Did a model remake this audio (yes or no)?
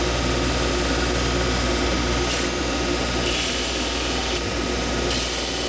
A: no